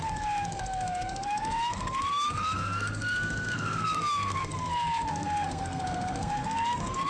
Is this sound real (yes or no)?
no